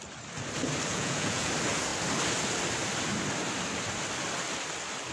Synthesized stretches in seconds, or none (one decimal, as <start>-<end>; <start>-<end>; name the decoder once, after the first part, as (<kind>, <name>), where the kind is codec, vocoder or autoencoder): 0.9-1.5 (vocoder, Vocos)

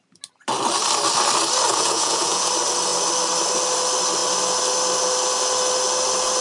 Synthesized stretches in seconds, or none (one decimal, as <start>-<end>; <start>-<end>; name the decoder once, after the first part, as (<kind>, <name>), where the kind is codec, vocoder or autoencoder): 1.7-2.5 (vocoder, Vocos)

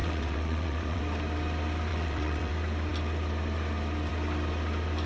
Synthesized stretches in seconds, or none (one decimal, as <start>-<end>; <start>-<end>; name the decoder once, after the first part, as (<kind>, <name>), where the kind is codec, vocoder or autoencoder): 0.0-1.0 (vocoder, WaveNeXt); 1.9-2.5